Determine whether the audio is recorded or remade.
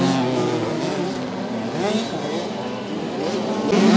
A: recorded